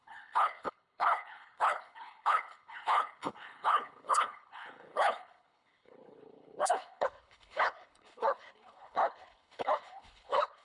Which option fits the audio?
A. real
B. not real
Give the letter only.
B